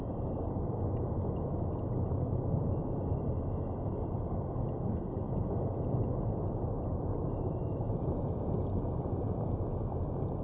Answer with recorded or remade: recorded